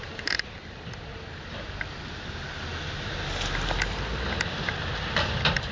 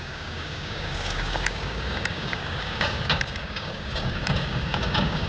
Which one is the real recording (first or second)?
first